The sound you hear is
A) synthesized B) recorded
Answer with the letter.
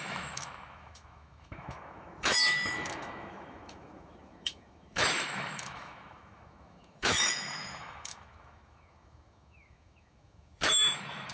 A